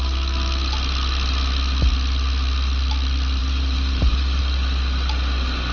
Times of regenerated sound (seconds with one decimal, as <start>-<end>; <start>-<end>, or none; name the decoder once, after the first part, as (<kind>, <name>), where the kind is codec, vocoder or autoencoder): 3.4-4.4 (vocoder, BigVGAN v2)